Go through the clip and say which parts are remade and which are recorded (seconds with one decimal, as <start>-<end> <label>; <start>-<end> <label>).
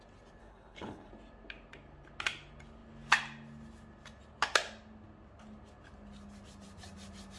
0.0-0.4 recorded; 0.4-1.1 remade; 1.1-7.4 recorded